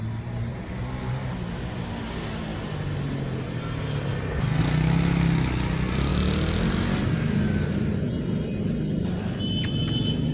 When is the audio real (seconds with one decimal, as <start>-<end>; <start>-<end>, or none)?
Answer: 0.0-10.3